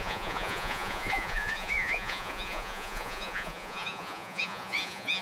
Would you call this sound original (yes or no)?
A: no